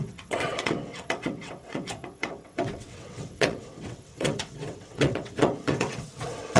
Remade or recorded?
remade